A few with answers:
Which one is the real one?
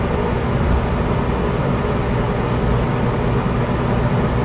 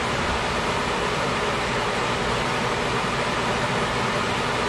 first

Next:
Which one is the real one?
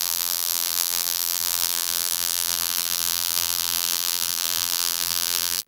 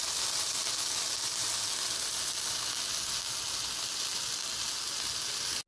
second